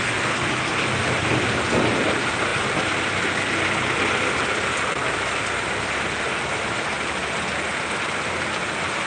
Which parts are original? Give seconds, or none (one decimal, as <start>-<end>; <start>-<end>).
0.0-9.1